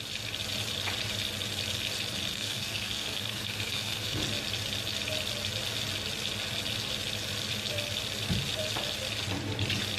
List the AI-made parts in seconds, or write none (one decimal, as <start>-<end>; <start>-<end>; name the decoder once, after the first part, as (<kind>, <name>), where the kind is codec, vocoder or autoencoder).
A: 2.3-4.2 (codec, SNAC)